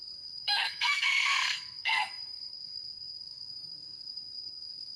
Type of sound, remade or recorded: remade